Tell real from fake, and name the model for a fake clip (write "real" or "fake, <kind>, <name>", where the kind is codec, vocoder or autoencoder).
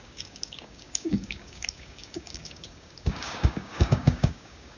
fake, codec, DAC